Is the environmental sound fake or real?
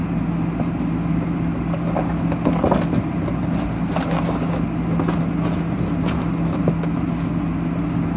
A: real